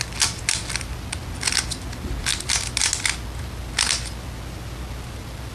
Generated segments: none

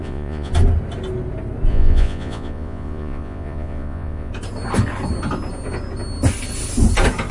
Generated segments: 0.0-0.5 (vocoder, Vocos); 1.7-4.3

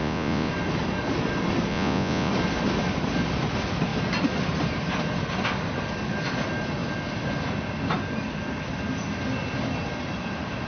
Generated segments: 0.0-0.5 (vocoder, Vocos); 1.7-2.3

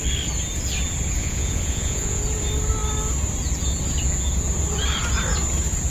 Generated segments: 1.2-2.2 (vocoder, Vocos)

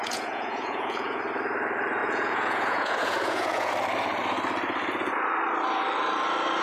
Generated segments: 0.0-1.2 (vocoder, Vocos); 2.0-3.7